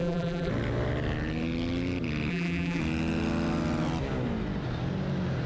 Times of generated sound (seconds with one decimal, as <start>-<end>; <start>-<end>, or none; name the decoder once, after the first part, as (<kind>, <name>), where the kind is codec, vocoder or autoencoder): 0.0-0.5 (vocoder, BigVGAN v2); 2.3-2.8